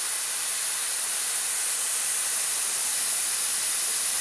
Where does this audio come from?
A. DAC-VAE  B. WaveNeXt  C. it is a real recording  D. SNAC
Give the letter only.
C